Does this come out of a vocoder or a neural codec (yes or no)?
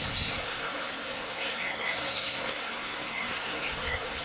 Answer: yes